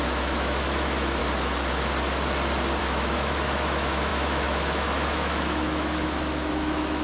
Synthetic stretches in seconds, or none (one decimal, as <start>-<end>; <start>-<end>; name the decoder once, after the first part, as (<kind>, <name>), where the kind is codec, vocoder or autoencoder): 0.0-1.2 (autoencoder, DAC-VAE); 2.8-7.0